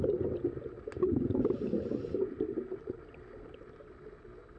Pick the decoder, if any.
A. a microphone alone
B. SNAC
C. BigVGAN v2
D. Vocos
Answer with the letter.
A